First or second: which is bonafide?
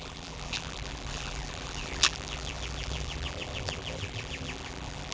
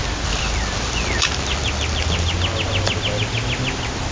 second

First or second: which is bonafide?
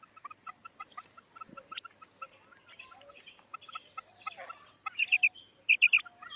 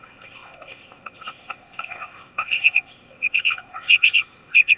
first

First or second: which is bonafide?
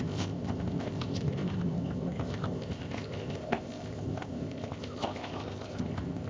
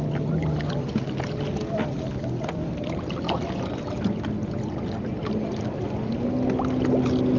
second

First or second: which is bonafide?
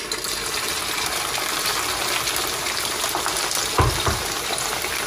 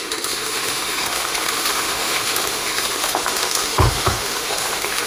first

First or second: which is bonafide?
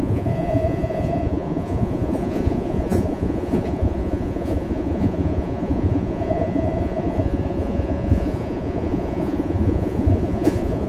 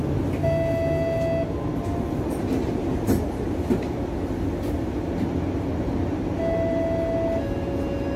second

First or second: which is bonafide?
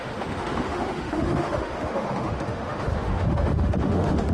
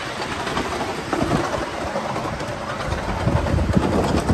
second